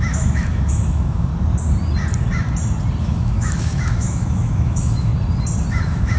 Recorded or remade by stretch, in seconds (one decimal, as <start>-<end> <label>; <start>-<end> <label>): 0.0-1.3 remade; 1.3-3.0 recorded; 3.0-5.1 remade; 5.1-5.7 recorded; 5.7-6.2 remade